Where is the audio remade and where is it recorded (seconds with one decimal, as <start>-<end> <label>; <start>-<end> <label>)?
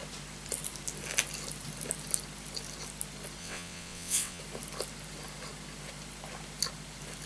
0.0-3.4 recorded; 3.4-4.4 remade; 4.4-7.3 recorded